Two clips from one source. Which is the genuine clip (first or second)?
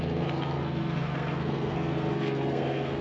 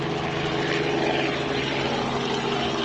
second